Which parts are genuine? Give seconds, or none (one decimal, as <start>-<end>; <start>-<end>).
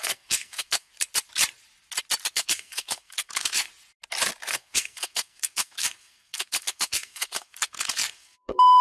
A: 0.9-2.3; 3.7-4.4